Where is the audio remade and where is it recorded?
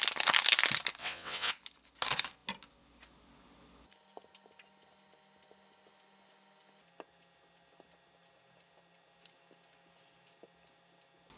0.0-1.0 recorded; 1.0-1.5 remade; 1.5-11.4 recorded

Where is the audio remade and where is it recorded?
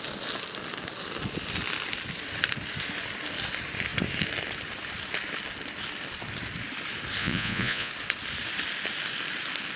0.0-7.2 recorded; 7.2-7.9 remade; 7.9-9.8 recorded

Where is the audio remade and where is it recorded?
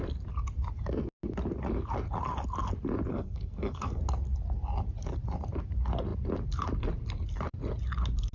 0.0-3.1 recorded; 3.1-4.0 remade; 4.0-8.3 recorded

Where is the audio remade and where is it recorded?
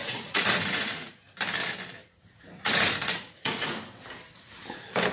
0.0-1.1 remade; 1.1-2.0 recorded; 2.0-3.8 remade; 3.8-5.1 recorded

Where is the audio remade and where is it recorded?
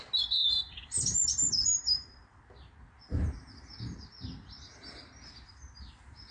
0.0-0.4 recorded; 0.4-2.4 remade; 2.4-6.3 recorded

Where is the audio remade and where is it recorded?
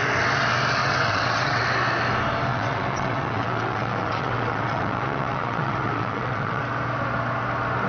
0.0-0.8 recorded; 0.8-1.6 remade; 1.6-2.5 recorded; 2.5-6.6 remade; 6.6-7.9 recorded